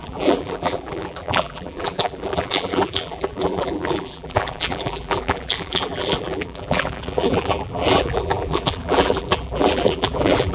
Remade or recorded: remade